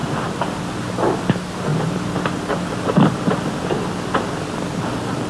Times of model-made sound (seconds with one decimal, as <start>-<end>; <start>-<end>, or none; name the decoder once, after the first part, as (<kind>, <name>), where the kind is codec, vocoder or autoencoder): none